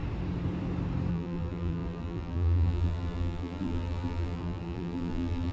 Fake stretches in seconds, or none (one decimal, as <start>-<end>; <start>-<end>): 1.1-5.5